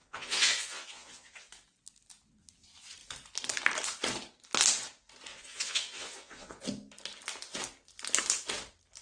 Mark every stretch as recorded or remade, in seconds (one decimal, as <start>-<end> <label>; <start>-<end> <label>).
0.0-1.5 remade; 1.5-5.3 recorded; 5.3-6.6 remade; 6.6-9.0 recorded